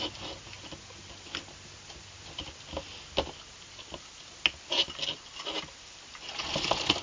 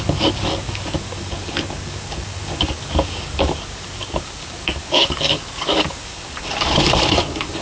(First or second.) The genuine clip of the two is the first